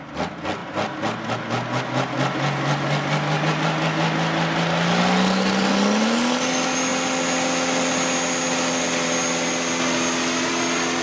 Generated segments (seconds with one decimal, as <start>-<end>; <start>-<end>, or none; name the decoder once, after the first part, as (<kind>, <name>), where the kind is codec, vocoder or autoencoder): none